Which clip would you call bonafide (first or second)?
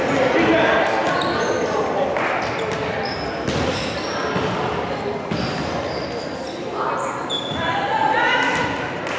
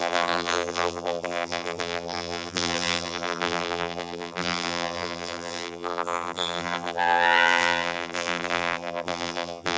first